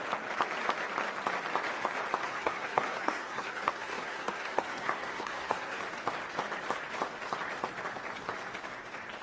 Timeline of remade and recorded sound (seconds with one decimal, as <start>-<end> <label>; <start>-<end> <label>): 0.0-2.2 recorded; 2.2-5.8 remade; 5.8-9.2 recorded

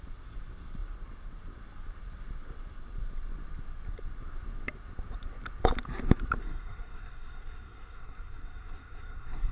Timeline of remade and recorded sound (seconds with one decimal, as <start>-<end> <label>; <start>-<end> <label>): 0.0-6.4 recorded; 6.4-9.5 remade

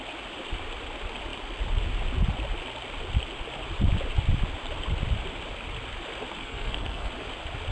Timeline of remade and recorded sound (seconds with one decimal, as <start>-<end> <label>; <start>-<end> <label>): 0.0-6.4 recorded; 6.4-7.1 remade; 7.1-7.7 recorded

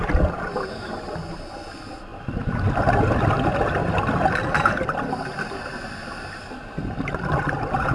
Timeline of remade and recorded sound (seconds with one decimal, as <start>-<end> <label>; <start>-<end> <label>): 0.0-7.9 recorded

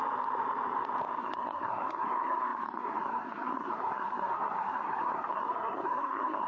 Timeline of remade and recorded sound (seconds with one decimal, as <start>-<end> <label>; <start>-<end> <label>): 0.0-1.2 recorded; 1.2-6.5 remade

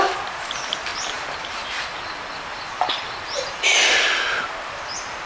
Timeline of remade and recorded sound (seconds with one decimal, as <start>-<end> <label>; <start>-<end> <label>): 0.0-5.3 recorded